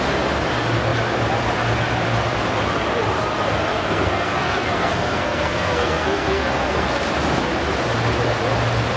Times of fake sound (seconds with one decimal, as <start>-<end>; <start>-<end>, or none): 3.7-7.0